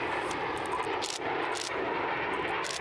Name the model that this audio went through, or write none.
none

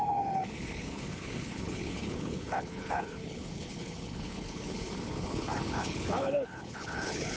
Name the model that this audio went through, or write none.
codec, HILCodec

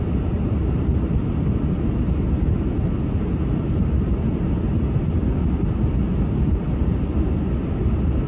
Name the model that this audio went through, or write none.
none